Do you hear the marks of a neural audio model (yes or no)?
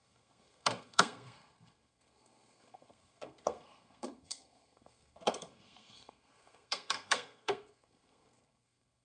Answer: yes